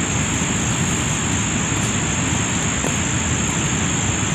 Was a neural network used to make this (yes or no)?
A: no